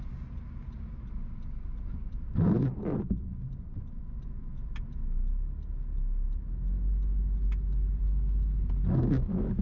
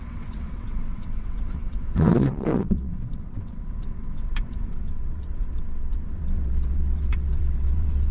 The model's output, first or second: second